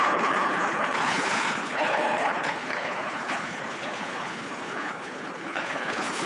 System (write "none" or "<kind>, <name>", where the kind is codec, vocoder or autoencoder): codec, HILCodec